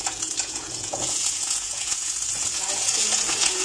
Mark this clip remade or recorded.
remade